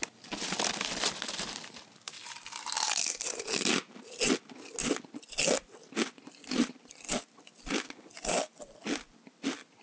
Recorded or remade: recorded